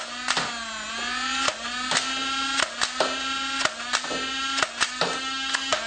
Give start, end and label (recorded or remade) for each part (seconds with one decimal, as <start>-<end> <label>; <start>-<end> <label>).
0.0-5.9 recorded